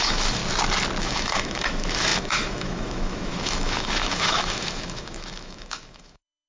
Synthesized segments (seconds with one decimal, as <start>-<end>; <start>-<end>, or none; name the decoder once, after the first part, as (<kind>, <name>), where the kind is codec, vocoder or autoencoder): 0.0-0.4 (autoencoder, DAC-VAE); 1.0-6.5